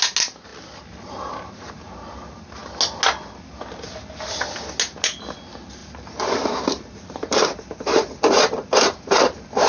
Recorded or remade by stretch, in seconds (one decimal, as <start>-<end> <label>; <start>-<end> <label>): 0.0-5.8 recorded; 5.8-8.2 remade; 8.2-8.6 recorded; 8.6-9.7 remade